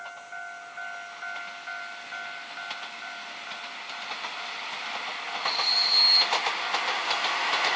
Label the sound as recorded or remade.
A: recorded